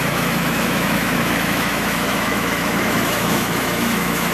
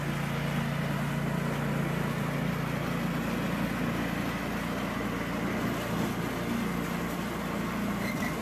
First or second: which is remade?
first